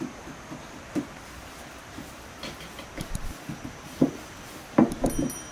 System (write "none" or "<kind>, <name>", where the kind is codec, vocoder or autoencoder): none